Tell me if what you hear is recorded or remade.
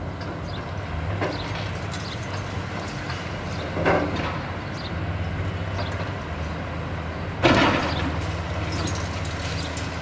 recorded